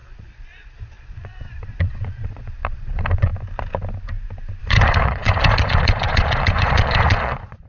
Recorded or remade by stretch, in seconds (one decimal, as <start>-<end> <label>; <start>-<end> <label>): 0.0-3.3 remade; 3.3-4.6 recorded; 4.6-7.7 remade